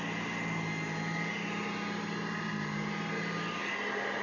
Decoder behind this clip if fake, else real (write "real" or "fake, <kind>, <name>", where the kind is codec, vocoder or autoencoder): real